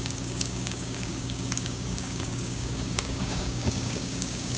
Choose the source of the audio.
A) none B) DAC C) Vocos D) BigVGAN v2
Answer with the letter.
B